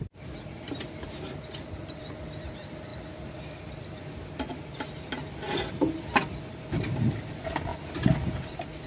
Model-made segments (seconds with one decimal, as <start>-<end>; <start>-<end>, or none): none